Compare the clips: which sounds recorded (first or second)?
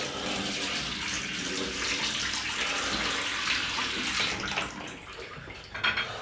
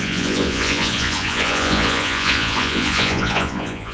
first